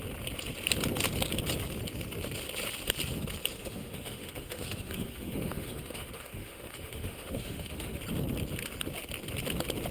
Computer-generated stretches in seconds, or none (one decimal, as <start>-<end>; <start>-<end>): 3.5-8.0